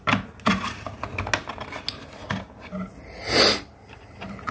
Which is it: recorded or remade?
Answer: recorded